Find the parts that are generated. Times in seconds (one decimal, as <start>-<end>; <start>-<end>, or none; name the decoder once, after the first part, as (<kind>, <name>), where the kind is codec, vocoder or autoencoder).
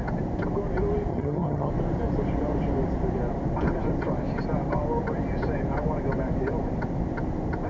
1.1-1.7 (vocoder, HiFi-GAN)